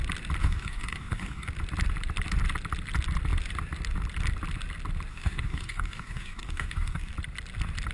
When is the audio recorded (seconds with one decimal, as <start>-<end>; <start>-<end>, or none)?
0.0-0.4; 1.5-5.1; 7.1-7.9